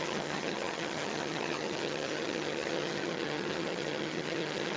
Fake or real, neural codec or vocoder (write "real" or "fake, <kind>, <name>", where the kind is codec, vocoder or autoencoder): fake, vocoder, HiFi-GAN